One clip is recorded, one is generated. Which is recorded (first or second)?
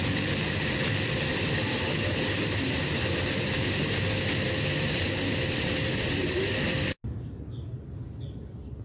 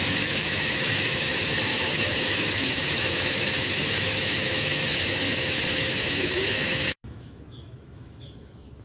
first